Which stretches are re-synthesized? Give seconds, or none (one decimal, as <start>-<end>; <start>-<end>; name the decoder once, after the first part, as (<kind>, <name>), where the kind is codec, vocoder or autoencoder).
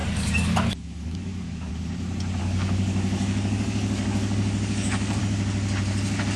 0.0-1.7 (codec, DAC); 2.4-5.2